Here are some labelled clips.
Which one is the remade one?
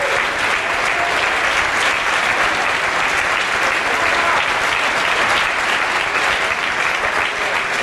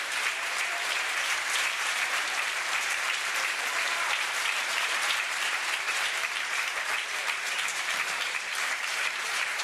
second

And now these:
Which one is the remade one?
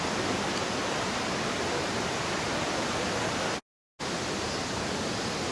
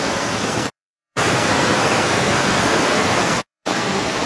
second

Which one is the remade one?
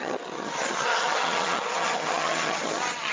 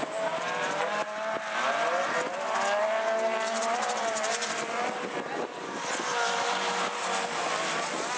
first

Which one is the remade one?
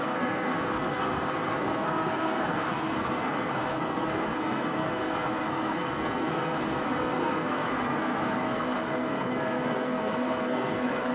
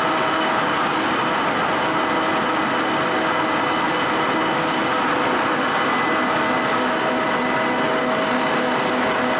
first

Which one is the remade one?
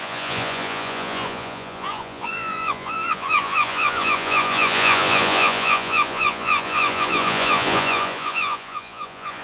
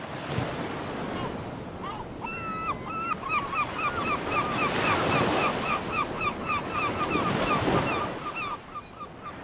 first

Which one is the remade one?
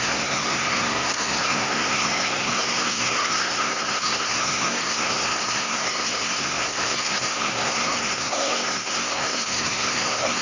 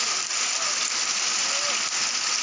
first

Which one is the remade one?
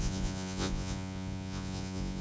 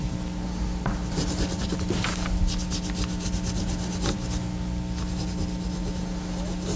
first